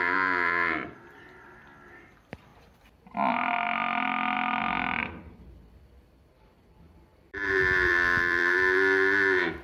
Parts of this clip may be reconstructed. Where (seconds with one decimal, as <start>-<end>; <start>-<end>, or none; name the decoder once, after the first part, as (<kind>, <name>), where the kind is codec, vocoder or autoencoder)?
0.0-2.5 (vocoder, BigVGAN v2); 5.8-9.6